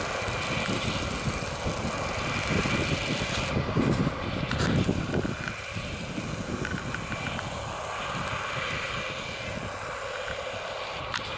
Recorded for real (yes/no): yes